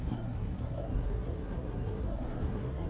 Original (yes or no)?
no